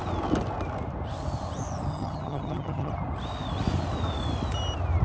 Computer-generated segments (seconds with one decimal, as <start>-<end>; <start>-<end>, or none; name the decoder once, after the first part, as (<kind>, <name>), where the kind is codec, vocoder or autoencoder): 1.9-2.9 (vocoder, HiFi-GAN)